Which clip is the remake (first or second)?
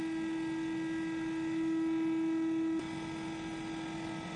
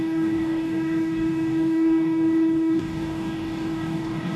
second